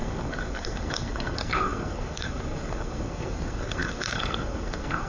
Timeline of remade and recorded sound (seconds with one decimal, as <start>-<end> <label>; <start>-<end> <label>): 0.0-5.1 remade